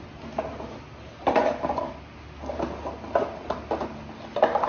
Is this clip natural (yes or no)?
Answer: yes